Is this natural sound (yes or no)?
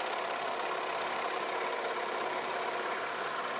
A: no